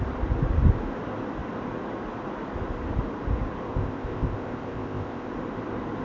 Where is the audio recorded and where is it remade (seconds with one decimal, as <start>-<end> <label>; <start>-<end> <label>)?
0.0-3.7 recorded; 3.7-5.3 remade; 5.3-6.0 recorded